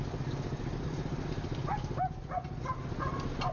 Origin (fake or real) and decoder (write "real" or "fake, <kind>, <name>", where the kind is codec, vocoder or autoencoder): real